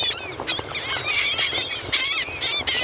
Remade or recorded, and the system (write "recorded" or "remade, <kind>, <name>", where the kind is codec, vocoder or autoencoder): recorded